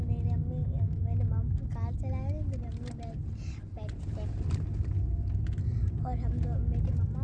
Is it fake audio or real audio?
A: real